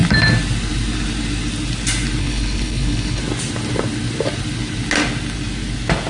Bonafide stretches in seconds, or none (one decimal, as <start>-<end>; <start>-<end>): 0.0-2.2; 3.2-6.1